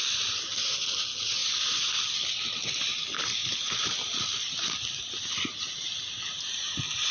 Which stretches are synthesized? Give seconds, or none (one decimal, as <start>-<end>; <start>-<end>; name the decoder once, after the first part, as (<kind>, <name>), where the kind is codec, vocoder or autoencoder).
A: none